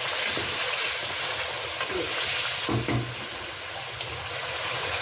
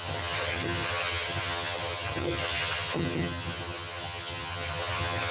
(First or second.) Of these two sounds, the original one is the first